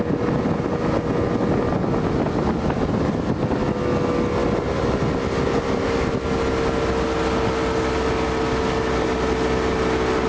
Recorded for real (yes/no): yes